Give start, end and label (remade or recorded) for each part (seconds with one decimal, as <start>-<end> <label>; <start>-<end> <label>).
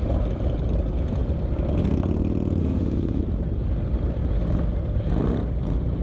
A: 0.0-2.6 recorded; 2.6-3.2 remade; 3.2-6.0 recorded